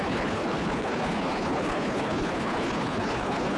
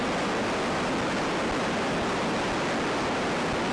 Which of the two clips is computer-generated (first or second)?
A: first